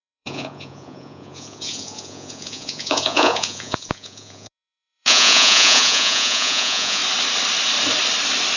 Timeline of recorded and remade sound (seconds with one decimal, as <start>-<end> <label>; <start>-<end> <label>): 0.0-7.0 remade; 7.0-8.6 recorded